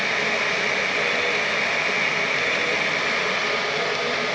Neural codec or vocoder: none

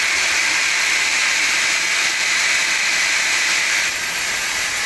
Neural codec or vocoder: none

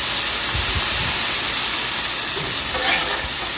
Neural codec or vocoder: none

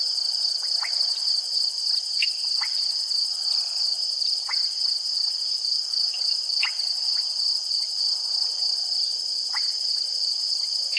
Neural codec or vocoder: none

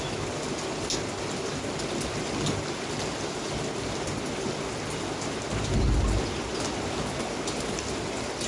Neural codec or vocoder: none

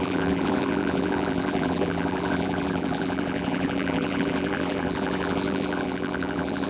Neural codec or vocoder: vocoder, BigVGAN v2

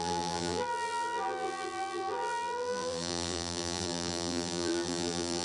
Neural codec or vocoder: vocoder, BigVGAN v2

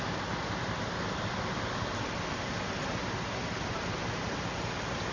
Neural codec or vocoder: none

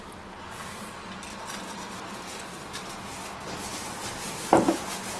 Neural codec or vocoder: none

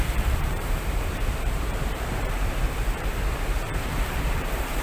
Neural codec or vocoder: vocoder, BigVGAN v2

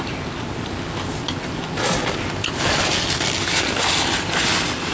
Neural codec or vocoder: none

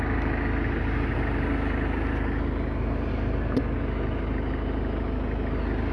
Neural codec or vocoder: none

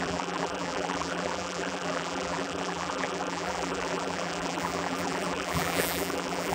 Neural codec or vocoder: vocoder, BigVGAN v2